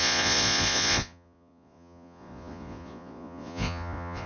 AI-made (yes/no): yes